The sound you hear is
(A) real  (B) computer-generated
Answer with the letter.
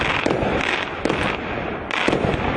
A